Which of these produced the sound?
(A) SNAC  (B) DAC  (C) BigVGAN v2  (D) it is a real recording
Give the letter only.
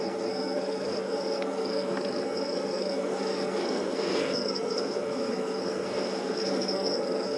A